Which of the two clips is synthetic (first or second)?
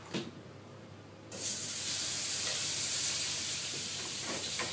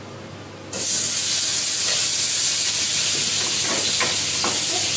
first